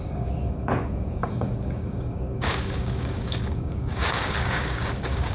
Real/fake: fake